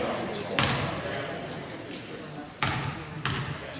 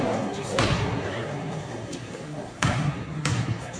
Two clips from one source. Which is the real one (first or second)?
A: first